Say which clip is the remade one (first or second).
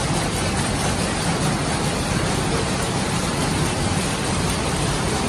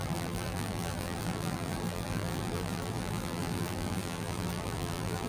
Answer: second